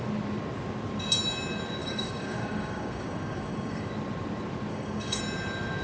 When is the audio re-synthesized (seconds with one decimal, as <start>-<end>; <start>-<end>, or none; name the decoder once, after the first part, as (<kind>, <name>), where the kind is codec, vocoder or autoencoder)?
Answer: 1.8-3.9 (codec, DAC); 4.7-5.2